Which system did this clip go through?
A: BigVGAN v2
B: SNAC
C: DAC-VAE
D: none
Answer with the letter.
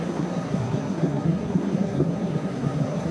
B